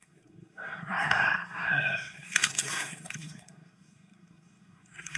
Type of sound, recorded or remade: remade